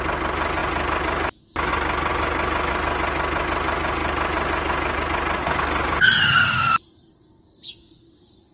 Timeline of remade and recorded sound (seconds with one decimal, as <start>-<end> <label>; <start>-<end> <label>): 0.0-5.8 recorded; 5.8-8.5 remade